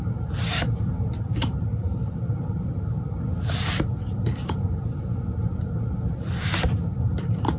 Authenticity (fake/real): fake